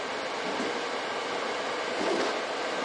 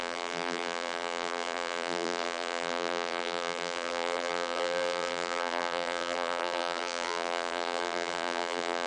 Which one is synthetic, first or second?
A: second